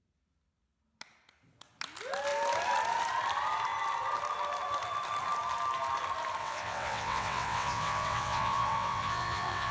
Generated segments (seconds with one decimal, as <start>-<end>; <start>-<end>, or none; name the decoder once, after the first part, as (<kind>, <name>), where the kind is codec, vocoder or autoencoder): 6.4-9.7 (vocoder, WaveNeXt)